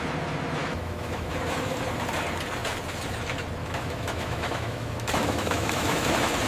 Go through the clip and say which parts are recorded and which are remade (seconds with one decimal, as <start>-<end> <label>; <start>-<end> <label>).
0.0-0.6 recorded; 0.6-1.3 remade; 1.3-3.6 recorded; 3.6-6.1 remade; 6.1-6.5 recorded